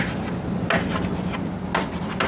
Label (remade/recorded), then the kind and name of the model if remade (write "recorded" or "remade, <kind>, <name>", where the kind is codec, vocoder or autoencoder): recorded